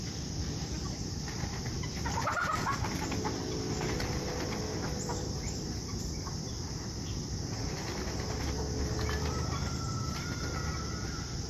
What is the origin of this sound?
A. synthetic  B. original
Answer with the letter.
B